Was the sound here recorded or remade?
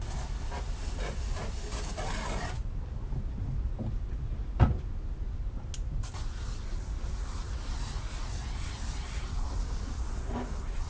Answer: recorded